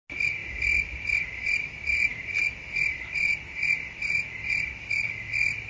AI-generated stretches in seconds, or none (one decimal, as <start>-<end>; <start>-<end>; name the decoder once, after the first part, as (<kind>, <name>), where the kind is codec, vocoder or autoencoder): none

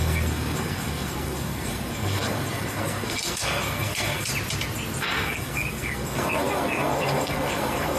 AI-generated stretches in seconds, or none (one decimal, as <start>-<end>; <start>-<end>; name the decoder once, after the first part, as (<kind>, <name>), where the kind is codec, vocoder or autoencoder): 0.0-4.3 (codec, SNAC); 5.0-8.0

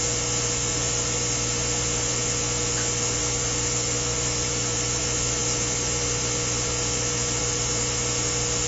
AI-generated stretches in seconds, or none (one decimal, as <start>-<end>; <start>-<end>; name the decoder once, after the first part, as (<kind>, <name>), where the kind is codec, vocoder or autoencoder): 0.6-1.5 (autoencoder, DAC-VAE); 3.2-5.0

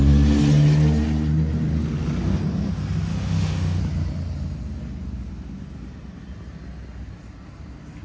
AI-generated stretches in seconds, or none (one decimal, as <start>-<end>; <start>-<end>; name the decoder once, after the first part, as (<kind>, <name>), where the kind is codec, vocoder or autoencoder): 3.1-3.8 (autoencoder, DAC-VAE)

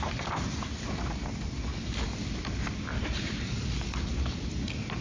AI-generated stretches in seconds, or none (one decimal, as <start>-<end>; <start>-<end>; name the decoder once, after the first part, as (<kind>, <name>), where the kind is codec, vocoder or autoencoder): none